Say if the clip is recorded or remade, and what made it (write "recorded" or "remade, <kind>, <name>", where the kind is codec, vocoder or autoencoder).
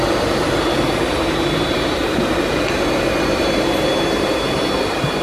remade, vocoder, BigVGAN v2